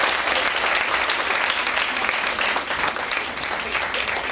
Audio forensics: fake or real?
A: real